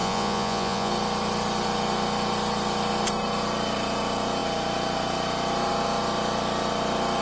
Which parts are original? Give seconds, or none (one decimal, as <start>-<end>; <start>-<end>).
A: 0.9-7.2